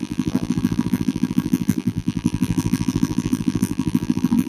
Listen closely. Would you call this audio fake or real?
fake